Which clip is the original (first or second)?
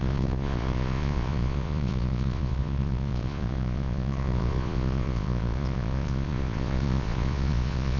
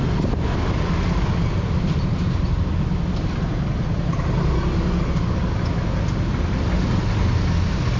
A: second